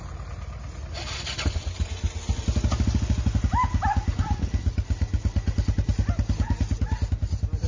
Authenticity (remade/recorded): recorded